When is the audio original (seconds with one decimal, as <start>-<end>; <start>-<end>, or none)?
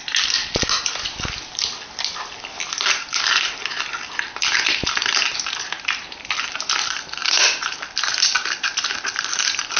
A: 0.4-3.2; 7.2-8.1